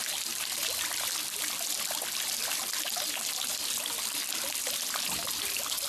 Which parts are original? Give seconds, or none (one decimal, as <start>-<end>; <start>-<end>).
0.0-5.9